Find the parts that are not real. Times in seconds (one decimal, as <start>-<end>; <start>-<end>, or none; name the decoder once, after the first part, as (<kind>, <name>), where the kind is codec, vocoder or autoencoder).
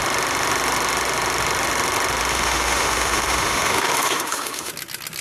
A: 2.3-4.7 (autoencoder, DAC-VAE)